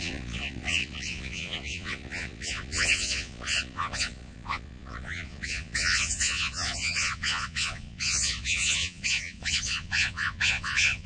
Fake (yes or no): yes